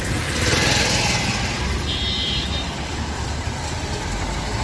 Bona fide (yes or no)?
yes